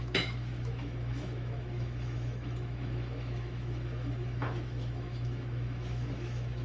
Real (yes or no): no